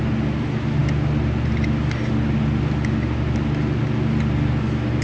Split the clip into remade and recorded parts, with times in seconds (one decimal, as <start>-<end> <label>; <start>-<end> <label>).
0.0-5.0 recorded